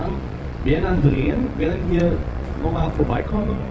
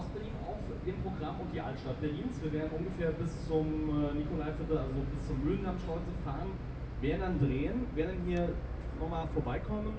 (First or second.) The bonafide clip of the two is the second